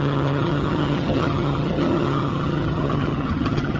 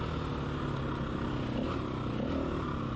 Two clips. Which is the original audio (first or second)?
second